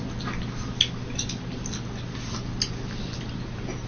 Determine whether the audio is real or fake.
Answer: real